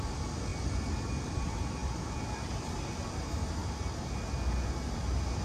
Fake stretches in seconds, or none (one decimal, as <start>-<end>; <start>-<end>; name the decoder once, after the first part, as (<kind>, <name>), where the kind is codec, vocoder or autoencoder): none